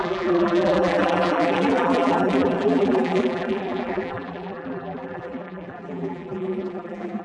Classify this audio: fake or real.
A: fake